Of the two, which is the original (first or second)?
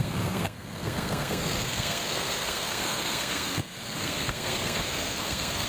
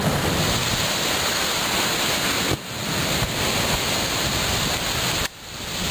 second